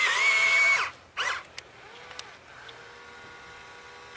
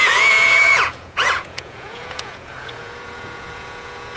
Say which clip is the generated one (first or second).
second